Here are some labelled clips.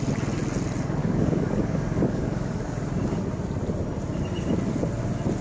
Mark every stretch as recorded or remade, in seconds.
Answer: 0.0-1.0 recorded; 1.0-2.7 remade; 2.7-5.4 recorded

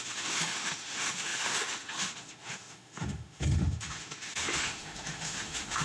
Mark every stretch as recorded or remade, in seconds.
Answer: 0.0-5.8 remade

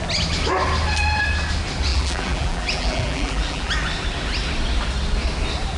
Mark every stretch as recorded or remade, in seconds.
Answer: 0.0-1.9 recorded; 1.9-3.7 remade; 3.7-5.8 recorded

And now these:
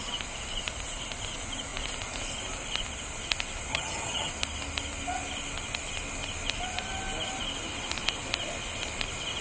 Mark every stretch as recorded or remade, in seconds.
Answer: 0.0-3.7 recorded; 3.7-4.3 remade; 4.3-9.4 recorded

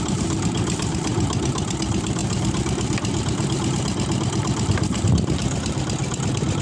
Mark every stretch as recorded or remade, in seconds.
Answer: 0.0-6.6 remade

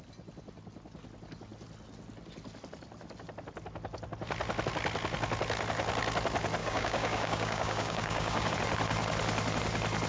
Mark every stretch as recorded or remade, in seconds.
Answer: 0.0-6.6 recorded; 6.6-8.5 remade; 8.5-10.1 recorded

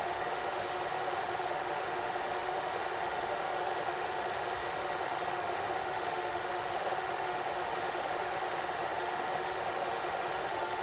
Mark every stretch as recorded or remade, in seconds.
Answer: 0.0-10.8 remade